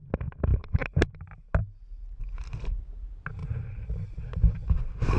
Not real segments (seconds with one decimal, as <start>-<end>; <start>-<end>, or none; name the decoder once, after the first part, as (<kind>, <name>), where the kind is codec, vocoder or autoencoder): 0.5-1.6 (vocoder, BigVGAN v2)